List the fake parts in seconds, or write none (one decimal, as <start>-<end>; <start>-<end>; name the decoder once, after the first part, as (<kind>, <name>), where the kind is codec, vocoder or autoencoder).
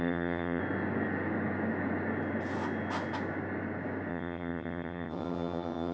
0.0-0.6 (vocoder, HiFi-GAN); 4.1-5.9